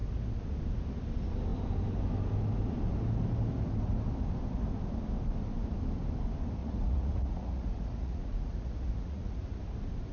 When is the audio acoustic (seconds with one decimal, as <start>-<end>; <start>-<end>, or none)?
0.0-6.6; 9.6-10.1